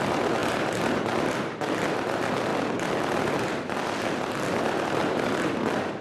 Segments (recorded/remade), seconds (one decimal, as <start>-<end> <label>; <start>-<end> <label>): 0.0-6.0 recorded